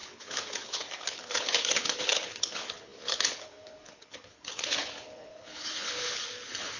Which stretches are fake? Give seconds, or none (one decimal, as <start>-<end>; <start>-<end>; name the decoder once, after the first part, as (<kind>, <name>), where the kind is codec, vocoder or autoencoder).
0.0-6.8 (codec, HILCodec)